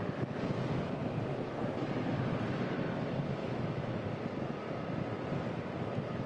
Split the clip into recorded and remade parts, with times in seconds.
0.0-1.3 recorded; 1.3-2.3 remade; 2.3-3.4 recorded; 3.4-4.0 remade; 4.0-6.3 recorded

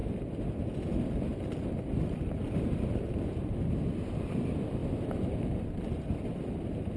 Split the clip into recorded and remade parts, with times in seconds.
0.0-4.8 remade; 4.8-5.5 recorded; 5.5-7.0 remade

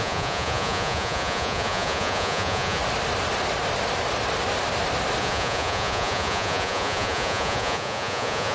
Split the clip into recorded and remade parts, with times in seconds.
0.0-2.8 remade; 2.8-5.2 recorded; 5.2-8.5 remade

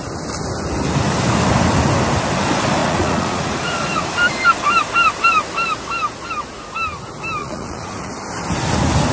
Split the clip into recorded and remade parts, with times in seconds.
0.0-2.8 recorded; 2.8-4.1 remade; 4.1-7.4 recorded; 7.4-8.1 remade; 8.1-9.1 recorded